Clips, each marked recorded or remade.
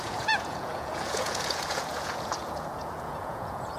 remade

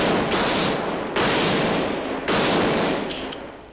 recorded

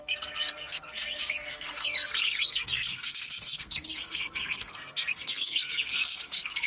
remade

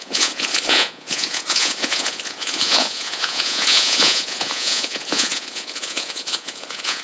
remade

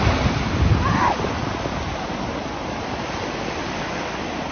recorded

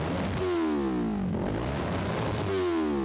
recorded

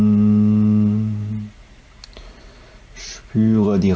recorded